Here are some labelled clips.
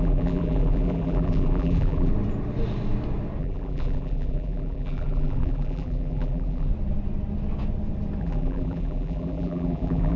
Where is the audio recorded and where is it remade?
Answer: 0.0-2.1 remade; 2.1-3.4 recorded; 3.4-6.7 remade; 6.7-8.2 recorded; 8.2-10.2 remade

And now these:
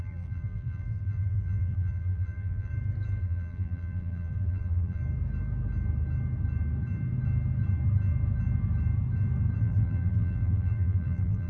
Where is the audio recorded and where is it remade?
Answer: 0.0-2.7 remade; 2.7-3.2 recorded; 3.2-5.0 remade; 5.0-9.6 recorded; 9.6-11.5 remade

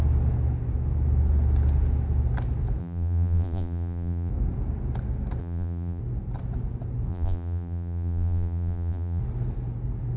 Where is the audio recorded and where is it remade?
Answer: 0.0-2.8 recorded; 2.8-4.3 remade; 4.3-5.4 recorded; 5.4-6.0 remade; 6.0-7.1 recorded; 7.1-9.2 remade; 9.2-10.2 recorded

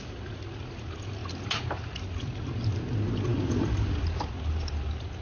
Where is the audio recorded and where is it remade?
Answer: 0.0-5.2 recorded

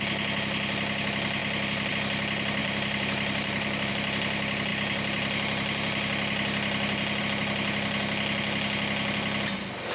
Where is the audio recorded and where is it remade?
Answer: 0.0-2.6 recorded; 2.6-3.9 remade; 3.9-9.9 recorded